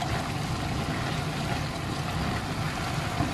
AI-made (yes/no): no